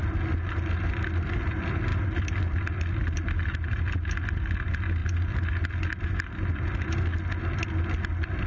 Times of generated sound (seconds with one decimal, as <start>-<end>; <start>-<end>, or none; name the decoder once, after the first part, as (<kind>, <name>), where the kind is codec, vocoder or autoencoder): 1.9-2.4 (vocoder, BigVGAN v2)